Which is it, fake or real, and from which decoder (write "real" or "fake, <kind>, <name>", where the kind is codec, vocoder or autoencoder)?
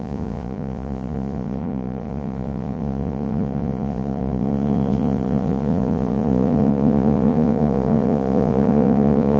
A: fake, vocoder, Vocos